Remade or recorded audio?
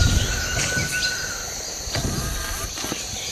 recorded